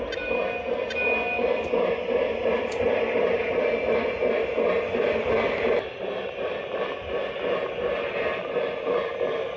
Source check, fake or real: real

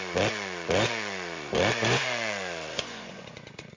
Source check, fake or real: fake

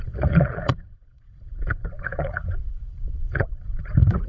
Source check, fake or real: fake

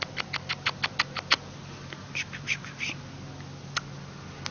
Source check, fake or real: real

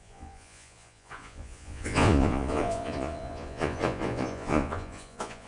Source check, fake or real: fake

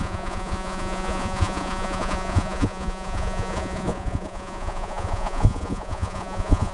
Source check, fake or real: fake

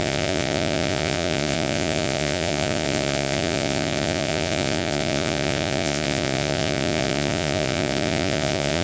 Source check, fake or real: fake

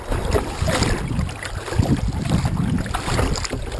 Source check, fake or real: real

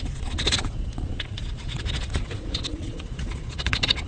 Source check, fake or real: fake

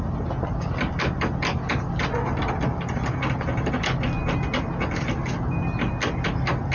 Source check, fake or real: real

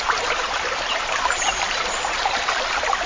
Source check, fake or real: real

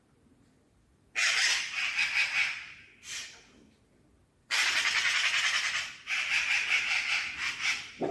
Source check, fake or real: real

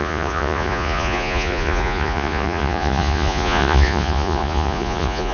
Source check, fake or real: fake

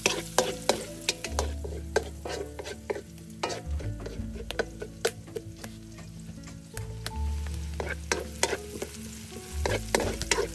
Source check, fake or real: real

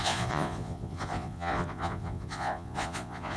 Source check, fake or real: fake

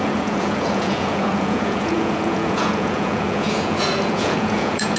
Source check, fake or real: fake